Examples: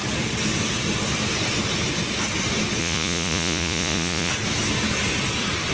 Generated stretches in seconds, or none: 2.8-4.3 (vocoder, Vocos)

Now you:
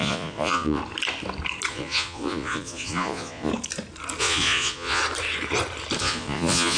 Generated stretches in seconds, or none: 0.0-0.8 (vocoder, Vocos); 1.7-3.5; 4.2-5.0; 6.0-6.8